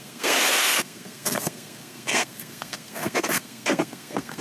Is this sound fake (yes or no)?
yes